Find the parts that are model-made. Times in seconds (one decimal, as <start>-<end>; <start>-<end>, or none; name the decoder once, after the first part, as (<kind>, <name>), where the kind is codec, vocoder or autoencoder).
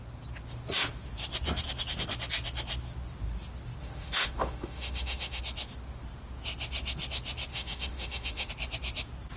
3.8-5.4 (autoencoder, DAC-VAE); 7.5-8.5